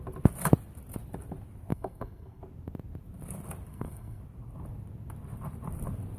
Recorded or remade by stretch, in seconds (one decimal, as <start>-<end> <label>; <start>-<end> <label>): 0.0-1.7 recorded; 1.7-2.4 remade; 2.4-3.7 recorded; 3.7-4.2 remade; 4.2-6.2 recorded